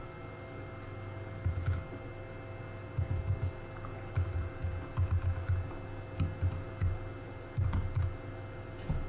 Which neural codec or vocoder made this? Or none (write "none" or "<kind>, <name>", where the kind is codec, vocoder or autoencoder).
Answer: none